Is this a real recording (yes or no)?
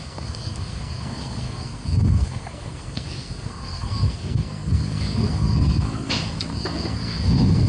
no